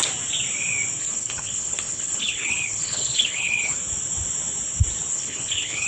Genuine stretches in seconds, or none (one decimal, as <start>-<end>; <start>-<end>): 0.0-1.0; 3.8-5.1

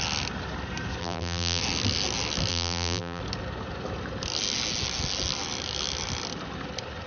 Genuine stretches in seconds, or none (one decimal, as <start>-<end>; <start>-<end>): 0.0-1.0; 1.6-2.5; 3.2-7.1

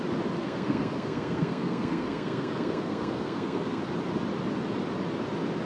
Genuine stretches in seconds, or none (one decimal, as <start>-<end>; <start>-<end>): 0.0-0.4; 3.8-5.7

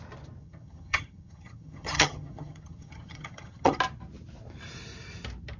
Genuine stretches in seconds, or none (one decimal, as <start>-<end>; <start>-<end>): 0.0-0.4; 3.8-5.6

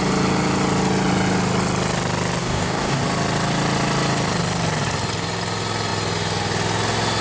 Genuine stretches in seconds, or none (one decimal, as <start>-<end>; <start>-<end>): 0.0-2.4; 3.0-7.2